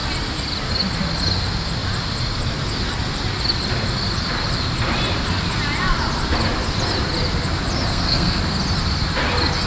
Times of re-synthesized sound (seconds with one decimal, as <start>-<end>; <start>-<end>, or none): 7.9-8.4